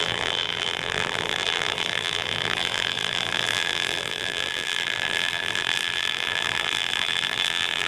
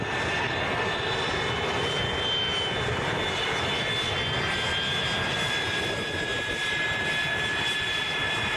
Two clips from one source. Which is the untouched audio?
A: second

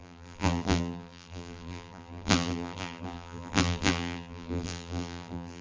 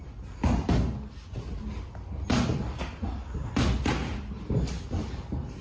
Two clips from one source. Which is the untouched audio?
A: second